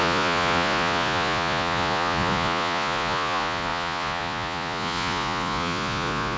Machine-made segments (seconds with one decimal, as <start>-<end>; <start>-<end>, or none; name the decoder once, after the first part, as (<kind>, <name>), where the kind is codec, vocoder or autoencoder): 0.0-6.4 (vocoder, Vocos)